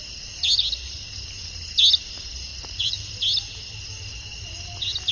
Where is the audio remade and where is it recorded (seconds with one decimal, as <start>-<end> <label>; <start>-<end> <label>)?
0.0-2.5 recorded; 2.5-3.1 remade; 3.1-5.1 recorded